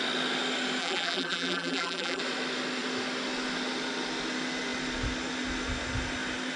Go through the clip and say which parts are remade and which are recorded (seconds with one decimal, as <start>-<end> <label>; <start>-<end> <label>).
0.0-0.8 recorded; 0.8-2.2 remade; 2.2-6.6 recorded